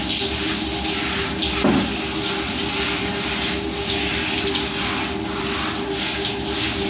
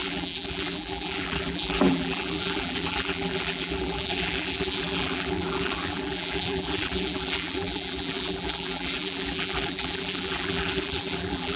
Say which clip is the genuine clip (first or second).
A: first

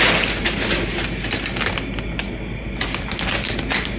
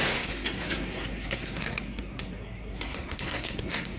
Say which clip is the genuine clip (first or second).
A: first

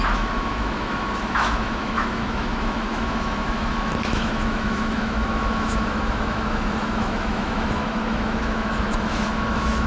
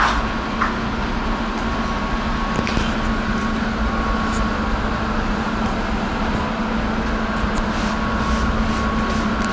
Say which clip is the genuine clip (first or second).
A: second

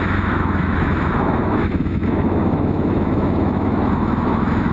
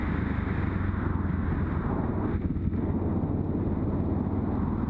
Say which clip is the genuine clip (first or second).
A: second